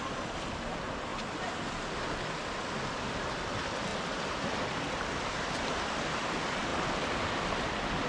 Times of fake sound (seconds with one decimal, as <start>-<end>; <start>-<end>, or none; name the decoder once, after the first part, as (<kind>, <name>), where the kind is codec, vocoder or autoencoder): none